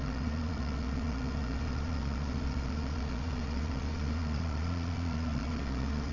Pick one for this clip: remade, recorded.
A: remade